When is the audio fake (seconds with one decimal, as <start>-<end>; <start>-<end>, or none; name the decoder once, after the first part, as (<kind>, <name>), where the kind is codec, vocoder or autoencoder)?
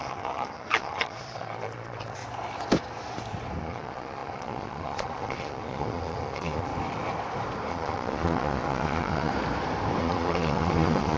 0.0-2.2 (vocoder, Vocos); 3.6-6.7; 7.7-9.3; 10.0-11.2